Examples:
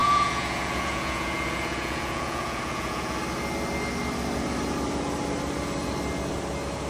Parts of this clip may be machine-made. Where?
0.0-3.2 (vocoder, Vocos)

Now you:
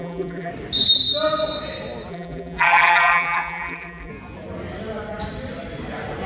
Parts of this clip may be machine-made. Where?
0.0-0.5 (vocoder, BigVGAN v2); 2.1-4.1

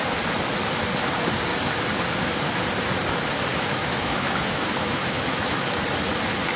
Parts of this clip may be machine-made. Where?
3.5-5.6 (autoencoder, DAC-VAE)

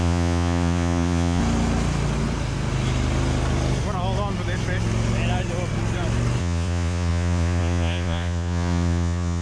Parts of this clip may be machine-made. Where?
0.0-1.4 (vocoder, Vocos); 6.4-9.4

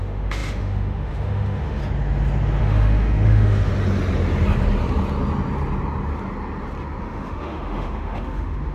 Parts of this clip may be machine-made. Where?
0.0-1.8 (autoencoder, DAC-VAE); 2.6-3.7; 7.0-8.7